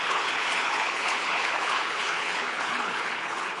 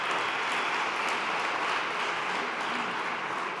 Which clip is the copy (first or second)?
first